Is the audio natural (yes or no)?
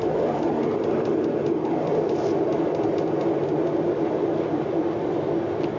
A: yes